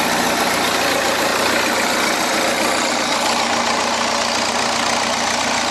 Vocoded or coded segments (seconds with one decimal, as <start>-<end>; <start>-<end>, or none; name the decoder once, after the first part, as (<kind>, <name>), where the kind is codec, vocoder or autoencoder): none